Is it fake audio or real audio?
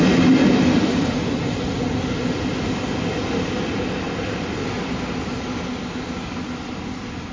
real